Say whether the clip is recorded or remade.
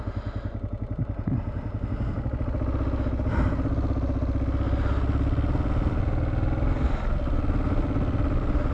recorded